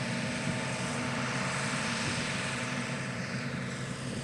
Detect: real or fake fake